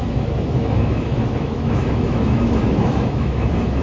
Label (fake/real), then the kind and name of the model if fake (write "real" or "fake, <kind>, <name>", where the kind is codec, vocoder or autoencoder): fake, autoencoder, DAC-VAE